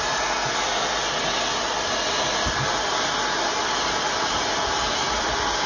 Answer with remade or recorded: recorded